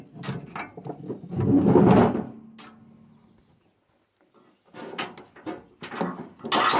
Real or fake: real